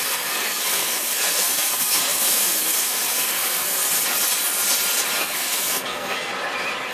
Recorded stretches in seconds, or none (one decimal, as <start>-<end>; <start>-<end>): 3.8-5.2; 6.3-6.9